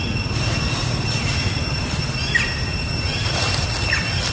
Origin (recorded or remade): recorded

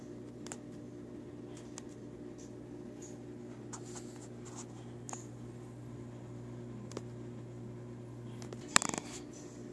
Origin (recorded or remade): recorded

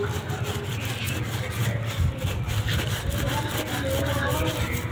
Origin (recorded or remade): recorded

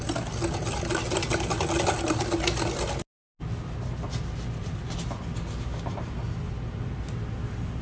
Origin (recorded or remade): recorded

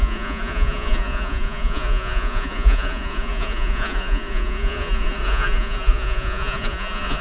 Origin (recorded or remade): remade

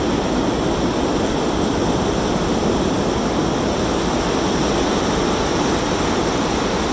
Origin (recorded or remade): recorded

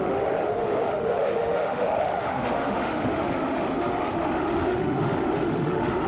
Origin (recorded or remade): remade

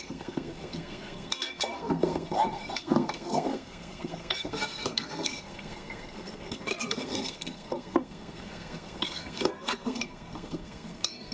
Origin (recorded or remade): remade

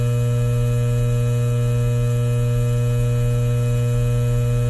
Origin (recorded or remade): recorded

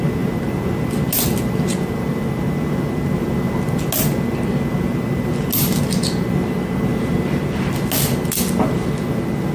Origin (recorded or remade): recorded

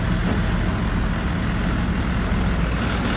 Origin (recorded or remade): recorded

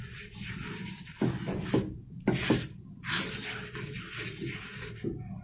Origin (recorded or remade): recorded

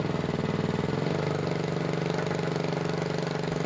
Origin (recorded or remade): recorded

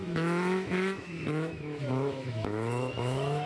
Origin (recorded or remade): remade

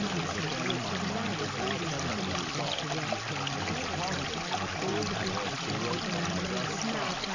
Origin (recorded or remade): recorded